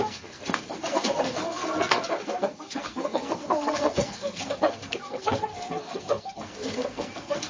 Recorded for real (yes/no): no